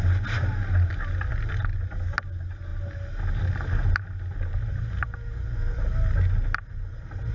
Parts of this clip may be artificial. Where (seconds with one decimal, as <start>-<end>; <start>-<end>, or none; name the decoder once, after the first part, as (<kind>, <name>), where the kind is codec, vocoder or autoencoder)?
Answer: none